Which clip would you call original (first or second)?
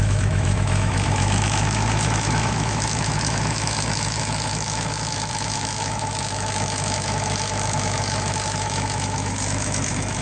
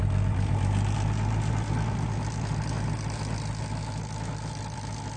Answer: second